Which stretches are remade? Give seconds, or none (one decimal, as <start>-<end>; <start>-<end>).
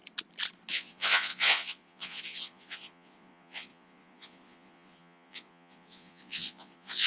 0.7-7.1